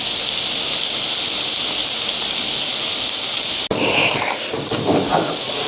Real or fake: real